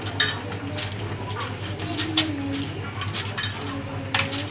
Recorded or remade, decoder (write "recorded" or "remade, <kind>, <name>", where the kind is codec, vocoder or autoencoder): recorded